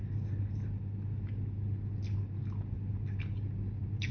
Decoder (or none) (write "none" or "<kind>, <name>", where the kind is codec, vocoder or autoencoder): none